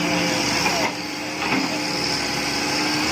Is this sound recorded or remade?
recorded